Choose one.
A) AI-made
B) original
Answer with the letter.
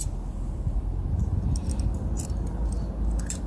B